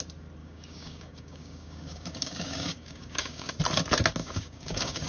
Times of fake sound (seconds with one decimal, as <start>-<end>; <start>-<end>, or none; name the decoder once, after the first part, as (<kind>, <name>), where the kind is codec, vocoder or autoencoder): 0.4-3.5 (codec, DAC); 4.2-5.1